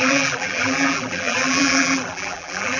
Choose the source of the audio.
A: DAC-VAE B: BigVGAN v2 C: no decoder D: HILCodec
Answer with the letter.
B